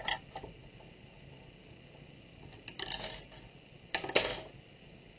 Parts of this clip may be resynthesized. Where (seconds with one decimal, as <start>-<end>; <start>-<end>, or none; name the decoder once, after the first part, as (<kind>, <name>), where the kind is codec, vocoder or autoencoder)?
none